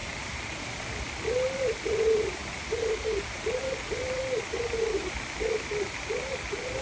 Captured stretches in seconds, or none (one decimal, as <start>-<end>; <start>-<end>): 1.0-6.8